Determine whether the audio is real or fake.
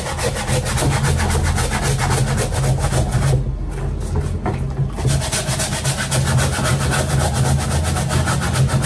real